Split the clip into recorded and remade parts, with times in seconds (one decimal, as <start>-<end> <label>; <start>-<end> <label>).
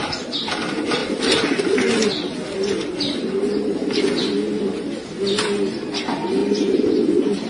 0.0-7.5 recorded